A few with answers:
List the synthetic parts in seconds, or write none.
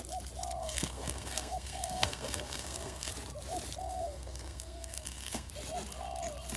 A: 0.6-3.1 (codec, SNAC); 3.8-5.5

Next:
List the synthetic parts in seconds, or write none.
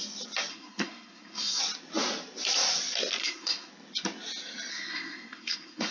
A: 0.5-1.6 (codec, SNAC); 3.2-3.7; 4.7-5.9